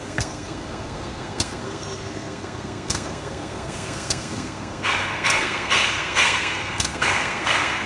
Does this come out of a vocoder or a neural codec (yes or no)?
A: yes